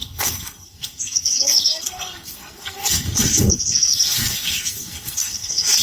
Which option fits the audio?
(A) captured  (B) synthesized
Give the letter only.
B